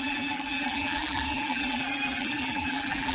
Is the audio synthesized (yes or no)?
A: yes